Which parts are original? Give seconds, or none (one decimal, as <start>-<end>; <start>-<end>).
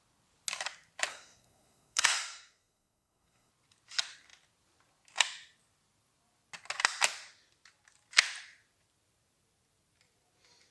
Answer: 0.0-1.1; 3.5-10.7